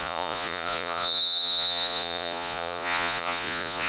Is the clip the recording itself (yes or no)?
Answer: no